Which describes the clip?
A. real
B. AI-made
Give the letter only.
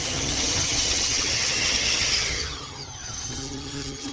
B